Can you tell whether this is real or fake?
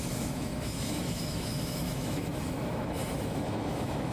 fake